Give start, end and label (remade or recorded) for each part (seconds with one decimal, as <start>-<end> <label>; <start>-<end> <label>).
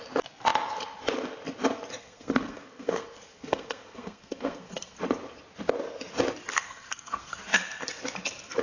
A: 0.0-2.0 recorded; 2.0-5.0 remade; 5.0-6.5 recorded; 6.5-7.4 remade; 7.4-8.6 recorded